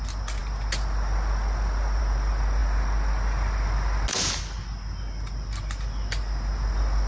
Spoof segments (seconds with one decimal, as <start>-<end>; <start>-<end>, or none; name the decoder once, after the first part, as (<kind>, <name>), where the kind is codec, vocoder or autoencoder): none